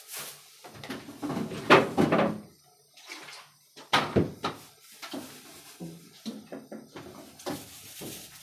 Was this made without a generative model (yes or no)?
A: yes